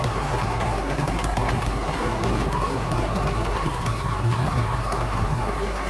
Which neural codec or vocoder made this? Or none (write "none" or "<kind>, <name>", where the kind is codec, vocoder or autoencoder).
codec, SNAC